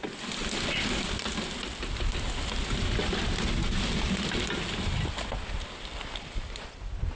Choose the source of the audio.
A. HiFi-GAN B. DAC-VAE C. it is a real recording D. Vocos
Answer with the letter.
C